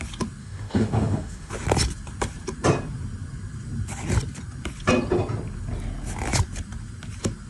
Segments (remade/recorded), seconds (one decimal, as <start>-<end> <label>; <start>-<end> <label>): 0.0-0.4 recorded; 0.4-1.5 remade; 1.5-7.5 recorded